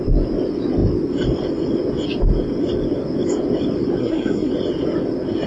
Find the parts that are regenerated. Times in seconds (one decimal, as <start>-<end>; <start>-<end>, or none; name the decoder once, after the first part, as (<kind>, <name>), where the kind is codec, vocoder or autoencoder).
4.0-4.5 (codec, SNAC)